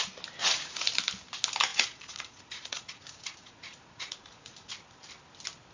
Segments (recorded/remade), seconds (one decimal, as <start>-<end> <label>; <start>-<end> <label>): 0.0-0.4 recorded; 0.4-0.9 remade; 0.9-1.7 recorded; 1.7-4.7 remade; 4.7-5.7 recorded